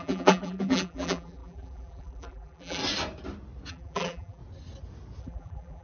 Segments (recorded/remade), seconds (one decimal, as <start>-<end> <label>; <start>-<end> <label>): 0.0-2.8 remade; 2.8-3.7 recorded; 3.7-4.4 remade; 4.4-5.2 recorded; 5.2-5.8 remade